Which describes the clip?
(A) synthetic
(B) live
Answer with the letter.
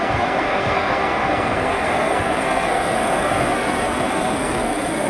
A